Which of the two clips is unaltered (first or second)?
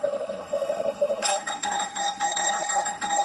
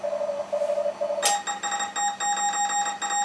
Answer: second